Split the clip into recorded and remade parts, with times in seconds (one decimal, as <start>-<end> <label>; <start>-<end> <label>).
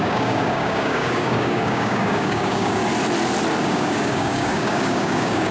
0.0-2.8 remade; 2.8-3.6 recorded; 3.6-5.5 remade